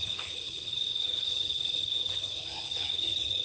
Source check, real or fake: fake